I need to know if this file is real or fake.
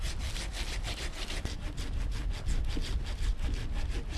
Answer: real